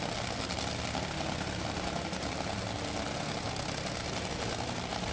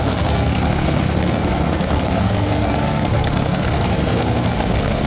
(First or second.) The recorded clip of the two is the first